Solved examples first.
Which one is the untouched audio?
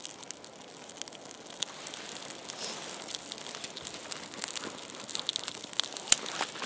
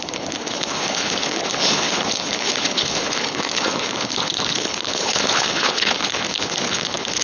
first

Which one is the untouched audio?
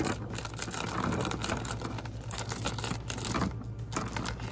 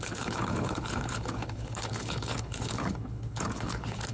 first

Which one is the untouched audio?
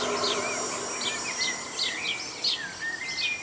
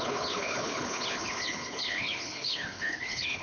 first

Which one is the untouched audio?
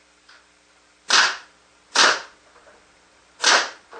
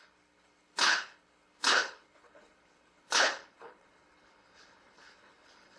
first